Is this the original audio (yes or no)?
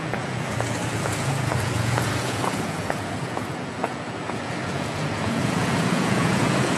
no